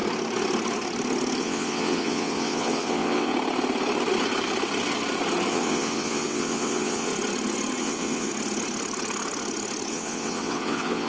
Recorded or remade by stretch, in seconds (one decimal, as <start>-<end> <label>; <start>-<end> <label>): 0.0-1.4 recorded; 1.4-3.3 remade; 3.3-5.5 recorded; 5.5-7.1 remade; 7.1-7.8 recorded; 7.8-8.3 remade; 8.3-9.9 recorded; 9.9-11.1 remade